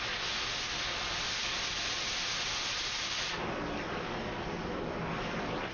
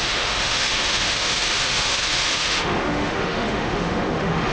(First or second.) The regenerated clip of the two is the second